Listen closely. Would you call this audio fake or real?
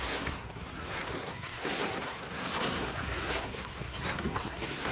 fake